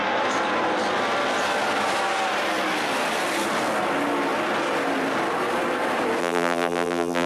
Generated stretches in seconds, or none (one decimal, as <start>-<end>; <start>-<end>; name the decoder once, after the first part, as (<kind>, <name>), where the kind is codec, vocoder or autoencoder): 6.2-7.3 (vocoder, BigVGAN v2)

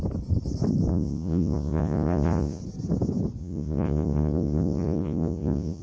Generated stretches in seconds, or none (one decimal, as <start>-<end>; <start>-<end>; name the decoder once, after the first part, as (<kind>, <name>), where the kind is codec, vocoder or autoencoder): 0.9-2.6 (vocoder, Vocos); 3.4-5.8

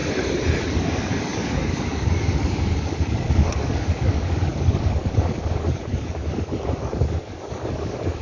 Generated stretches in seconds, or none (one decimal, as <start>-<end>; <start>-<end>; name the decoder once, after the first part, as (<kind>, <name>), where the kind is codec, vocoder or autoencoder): 0.8-8.2 (codec, DAC)

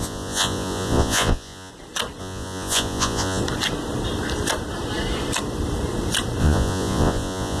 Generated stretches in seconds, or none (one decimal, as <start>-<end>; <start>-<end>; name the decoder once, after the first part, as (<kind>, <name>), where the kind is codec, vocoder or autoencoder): 0.0-1.7 (vocoder, Vocos); 2.2-3.4; 6.4-7.6

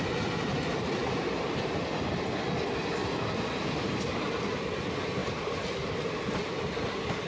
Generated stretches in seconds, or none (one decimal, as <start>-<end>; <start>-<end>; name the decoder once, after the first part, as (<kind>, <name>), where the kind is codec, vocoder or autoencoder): 1.0-2.1 (vocoder, BigVGAN v2); 3.0-4.8; 5.2-5.9

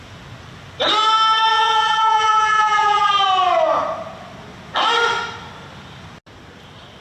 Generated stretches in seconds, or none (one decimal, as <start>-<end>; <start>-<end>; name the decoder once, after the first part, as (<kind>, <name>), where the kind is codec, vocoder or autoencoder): 1.5-3.1 (vocoder, BigVGAN v2)

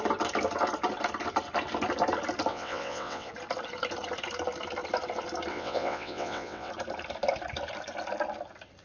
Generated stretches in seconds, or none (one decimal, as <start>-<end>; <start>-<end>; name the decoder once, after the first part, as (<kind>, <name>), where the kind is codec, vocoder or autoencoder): 2.5-3.3 (vocoder, WaveNeXt); 5.5-6.7

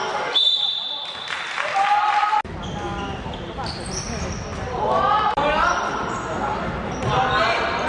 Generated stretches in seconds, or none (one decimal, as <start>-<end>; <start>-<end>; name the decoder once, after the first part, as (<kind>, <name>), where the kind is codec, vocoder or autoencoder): none